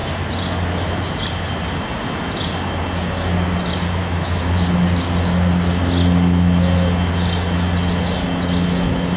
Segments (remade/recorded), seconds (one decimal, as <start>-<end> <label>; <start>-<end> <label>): 0.0-4.0 recorded; 4.0-4.5 remade; 4.5-9.2 recorded